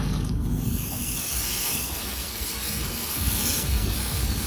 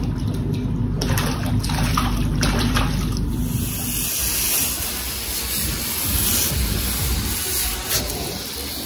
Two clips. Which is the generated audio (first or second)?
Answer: first